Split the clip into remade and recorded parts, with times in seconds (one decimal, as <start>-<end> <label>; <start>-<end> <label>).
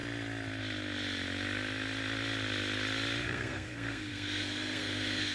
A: 0.0-3.2 recorded; 3.2-5.3 remade